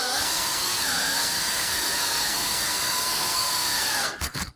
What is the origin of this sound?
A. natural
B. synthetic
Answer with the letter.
B